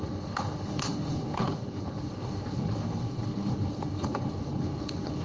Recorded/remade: remade